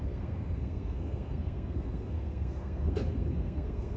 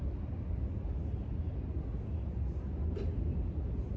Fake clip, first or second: first